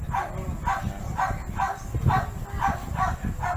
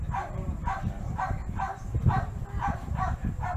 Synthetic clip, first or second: second